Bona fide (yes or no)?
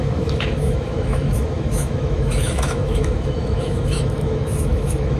no